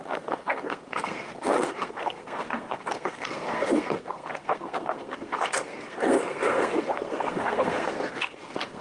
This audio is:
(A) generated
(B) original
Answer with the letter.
A